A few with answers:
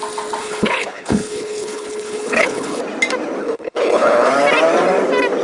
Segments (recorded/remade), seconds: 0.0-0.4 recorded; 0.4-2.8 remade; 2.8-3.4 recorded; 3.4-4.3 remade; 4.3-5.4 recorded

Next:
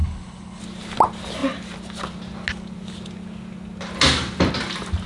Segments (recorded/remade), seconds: 0.0-0.6 remade; 0.6-5.1 recorded

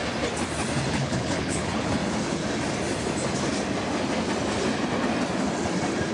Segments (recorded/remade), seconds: 0.0-0.9 recorded; 0.9-2.0 remade; 2.0-6.1 recorded

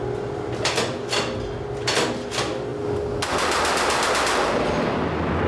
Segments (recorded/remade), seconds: 0.0-5.5 recorded

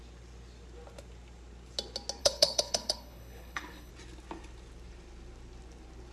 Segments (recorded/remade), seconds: 0.0-2.2 recorded; 2.2-3.9 remade; 3.9-6.1 recorded

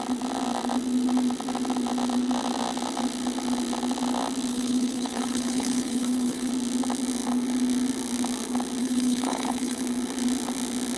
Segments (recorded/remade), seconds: 0.0-4.5 recorded; 4.5-6.5 remade; 6.5-8.8 recorded; 8.8-9.8 remade; 9.8-11.0 recorded

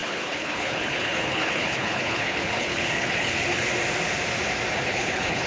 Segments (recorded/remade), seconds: 0.0-3.7 remade; 3.7-4.7 recorded; 4.7-5.5 remade